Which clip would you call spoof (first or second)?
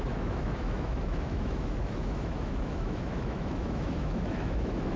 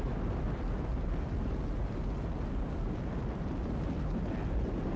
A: first